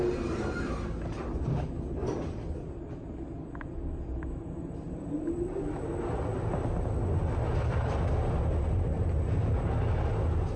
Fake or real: real